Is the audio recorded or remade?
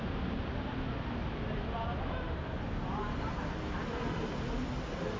recorded